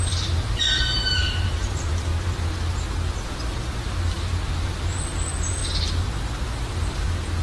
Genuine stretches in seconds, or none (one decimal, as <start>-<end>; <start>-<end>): 2.1-3.3; 5.6-7.4